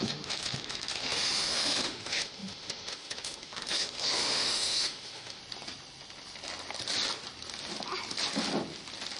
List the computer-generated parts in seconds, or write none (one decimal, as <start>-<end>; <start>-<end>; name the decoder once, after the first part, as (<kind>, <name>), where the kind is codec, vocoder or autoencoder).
0.0-5.4 (autoencoder, DAC-VAE)